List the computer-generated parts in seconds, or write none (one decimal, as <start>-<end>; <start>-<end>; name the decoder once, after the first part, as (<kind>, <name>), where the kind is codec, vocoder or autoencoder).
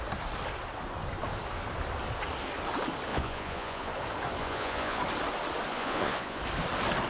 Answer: 3.1-3.9 (vocoder, Vocos); 4.4-5.0; 5.7-6.4